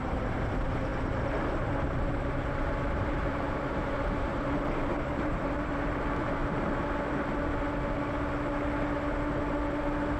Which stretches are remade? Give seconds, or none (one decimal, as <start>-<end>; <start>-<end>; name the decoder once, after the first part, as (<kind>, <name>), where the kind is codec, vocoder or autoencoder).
0.0-6.4 (vocoder, BigVGAN v2)